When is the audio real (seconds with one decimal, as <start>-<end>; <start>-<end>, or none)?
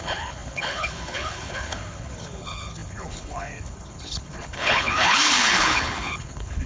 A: none